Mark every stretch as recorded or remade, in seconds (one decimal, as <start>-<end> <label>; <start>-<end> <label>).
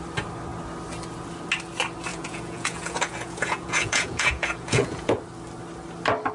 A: 0.0-2.1 recorded; 2.1-5.2 remade; 5.2-6.3 recorded